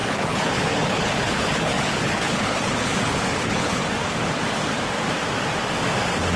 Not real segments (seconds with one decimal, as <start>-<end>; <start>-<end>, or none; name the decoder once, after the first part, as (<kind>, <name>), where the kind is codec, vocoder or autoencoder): 0.0-3.8 (codec, HILCodec)